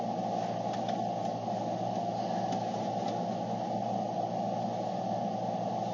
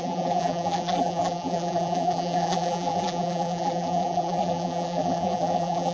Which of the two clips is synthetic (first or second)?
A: second